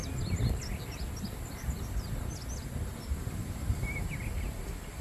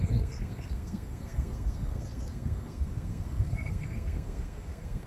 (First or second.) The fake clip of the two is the second